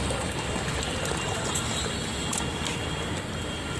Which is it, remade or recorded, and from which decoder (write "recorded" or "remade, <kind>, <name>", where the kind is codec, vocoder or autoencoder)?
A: recorded